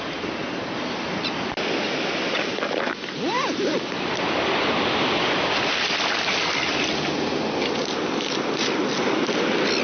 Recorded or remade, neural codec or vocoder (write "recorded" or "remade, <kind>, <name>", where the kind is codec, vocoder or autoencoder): recorded